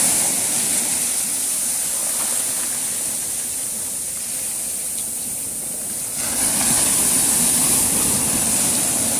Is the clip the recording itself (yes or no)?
yes